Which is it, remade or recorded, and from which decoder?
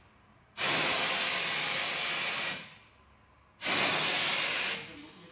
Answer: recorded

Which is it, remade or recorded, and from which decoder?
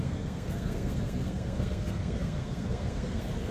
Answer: remade, codec, SNAC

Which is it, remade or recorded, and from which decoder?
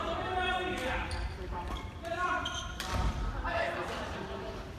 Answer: remade, vocoder, BigVGAN v2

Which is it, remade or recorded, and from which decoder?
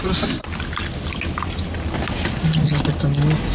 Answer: recorded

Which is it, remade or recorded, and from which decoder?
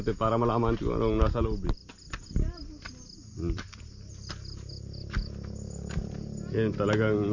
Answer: recorded